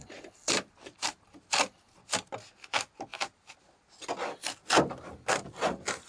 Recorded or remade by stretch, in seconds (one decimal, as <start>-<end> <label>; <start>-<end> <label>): 0.0-6.1 recorded